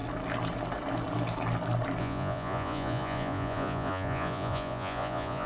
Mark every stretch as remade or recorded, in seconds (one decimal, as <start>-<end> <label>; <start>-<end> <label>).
0.0-2.0 recorded; 2.0-5.5 remade